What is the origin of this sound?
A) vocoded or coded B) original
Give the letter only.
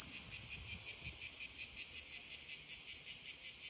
B